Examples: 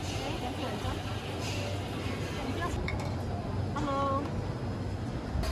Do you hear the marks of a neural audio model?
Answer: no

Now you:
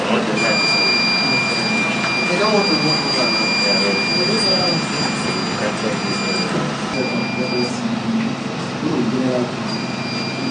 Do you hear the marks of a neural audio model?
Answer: no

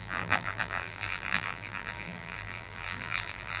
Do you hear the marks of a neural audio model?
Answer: yes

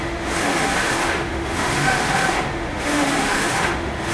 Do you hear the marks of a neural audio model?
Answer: yes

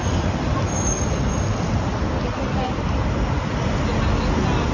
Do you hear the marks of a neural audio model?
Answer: no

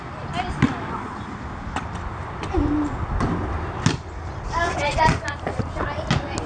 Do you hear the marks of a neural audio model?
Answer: no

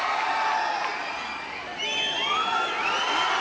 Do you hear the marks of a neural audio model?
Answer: no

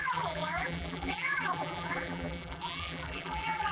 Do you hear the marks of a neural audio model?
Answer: yes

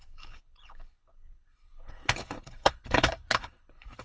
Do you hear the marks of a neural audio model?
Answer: yes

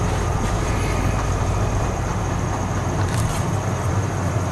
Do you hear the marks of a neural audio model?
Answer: yes